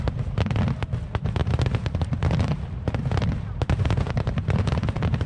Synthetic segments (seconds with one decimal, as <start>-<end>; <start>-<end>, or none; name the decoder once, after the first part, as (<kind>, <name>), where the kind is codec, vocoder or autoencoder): 1.4-4.6 (vocoder, BigVGAN v2)